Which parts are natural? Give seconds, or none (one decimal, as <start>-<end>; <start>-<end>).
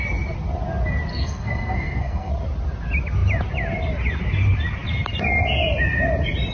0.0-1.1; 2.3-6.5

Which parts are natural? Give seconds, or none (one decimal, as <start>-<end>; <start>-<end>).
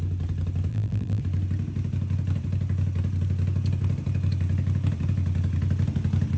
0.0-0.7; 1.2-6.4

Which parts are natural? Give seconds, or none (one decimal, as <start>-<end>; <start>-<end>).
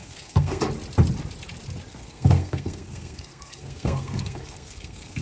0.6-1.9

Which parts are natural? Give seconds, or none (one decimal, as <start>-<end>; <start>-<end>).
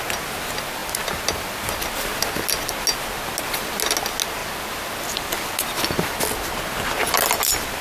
0.0-7.8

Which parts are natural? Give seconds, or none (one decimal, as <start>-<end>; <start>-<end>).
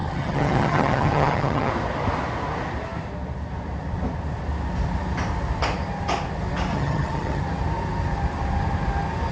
1.7-6.7; 7.4-9.3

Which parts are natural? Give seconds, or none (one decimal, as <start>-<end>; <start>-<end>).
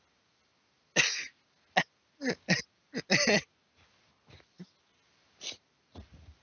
0.0-6.4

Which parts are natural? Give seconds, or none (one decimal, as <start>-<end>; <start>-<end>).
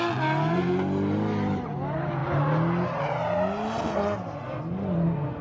0.0-5.4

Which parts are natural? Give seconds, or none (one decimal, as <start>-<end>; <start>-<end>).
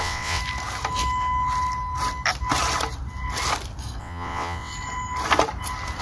0.4-4.0; 4.7-6.0